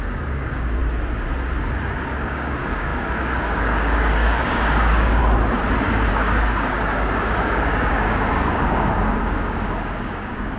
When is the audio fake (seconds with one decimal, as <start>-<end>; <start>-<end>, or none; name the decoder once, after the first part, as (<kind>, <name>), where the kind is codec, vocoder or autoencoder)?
0.0-0.8 (codec, DAC); 1.9-5.2; 6.1-10.6